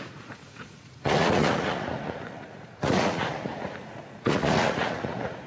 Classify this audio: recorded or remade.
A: remade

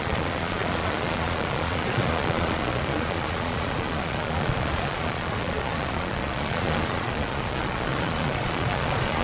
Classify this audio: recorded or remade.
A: remade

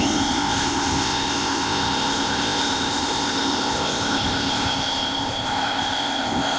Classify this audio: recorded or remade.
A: remade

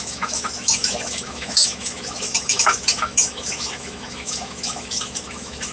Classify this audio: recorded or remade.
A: remade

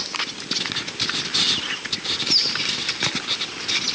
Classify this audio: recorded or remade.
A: recorded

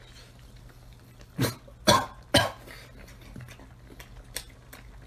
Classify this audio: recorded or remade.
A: recorded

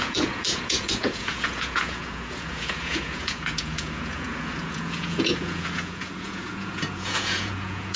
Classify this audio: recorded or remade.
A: remade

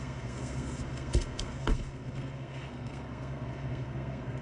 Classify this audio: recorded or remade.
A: remade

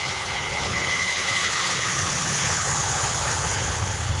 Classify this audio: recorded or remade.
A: remade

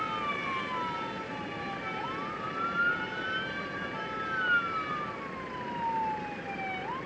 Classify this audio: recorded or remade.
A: recorded